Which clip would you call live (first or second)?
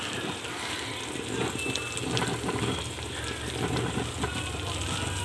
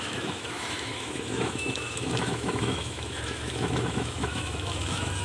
first